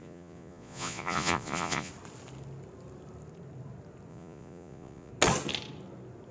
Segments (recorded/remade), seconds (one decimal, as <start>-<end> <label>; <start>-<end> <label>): 0.0-1.9 remade; 1.9-4.1 recorded; 4.1-5.1 remade; 5.1-6.3 recorded